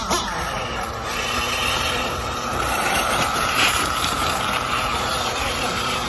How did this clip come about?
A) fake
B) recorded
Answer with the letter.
A